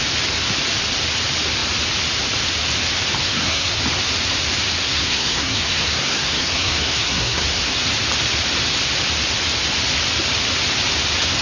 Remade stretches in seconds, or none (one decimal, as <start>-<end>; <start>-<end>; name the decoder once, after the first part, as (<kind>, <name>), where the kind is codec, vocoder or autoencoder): 3.2-3.8 (codec, SNAC); 4.8-7.7